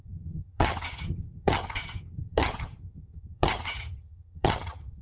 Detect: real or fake fake